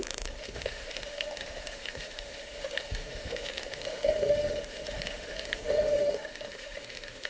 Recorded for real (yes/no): no